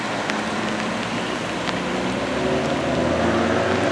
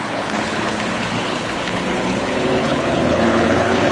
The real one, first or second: first